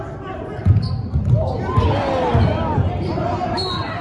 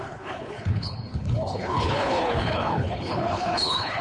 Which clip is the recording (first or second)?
first